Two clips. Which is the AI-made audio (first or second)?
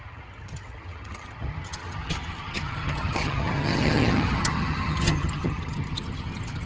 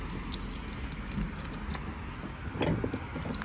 first